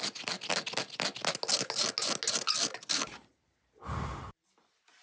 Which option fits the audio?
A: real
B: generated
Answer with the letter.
A